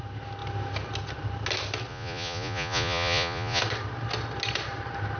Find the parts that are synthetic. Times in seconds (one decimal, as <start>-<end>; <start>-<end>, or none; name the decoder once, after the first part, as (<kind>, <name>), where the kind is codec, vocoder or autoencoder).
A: 1.9-3.6 (vocoder, Vocos)